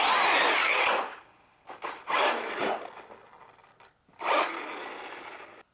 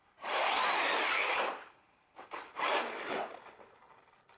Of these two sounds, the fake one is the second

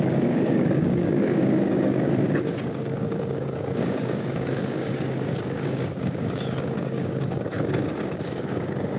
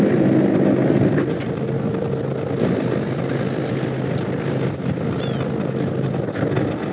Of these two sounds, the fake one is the first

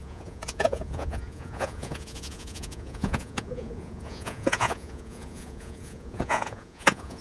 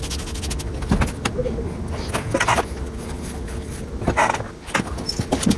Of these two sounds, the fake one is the first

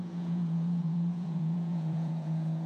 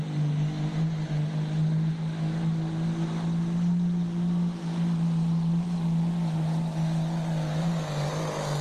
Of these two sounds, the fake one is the first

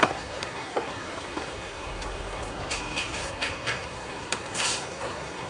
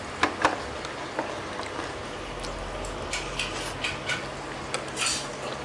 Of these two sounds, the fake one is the first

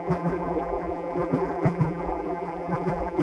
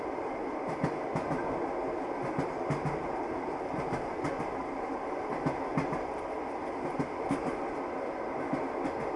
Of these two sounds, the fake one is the first